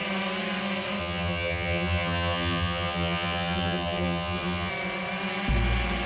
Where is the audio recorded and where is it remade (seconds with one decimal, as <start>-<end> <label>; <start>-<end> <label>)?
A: 0.0-1.0 recorded; 1.0-4.7 remade; 4.7-6.1 recorded